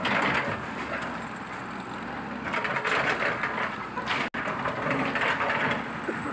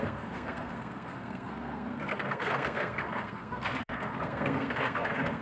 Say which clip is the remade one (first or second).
second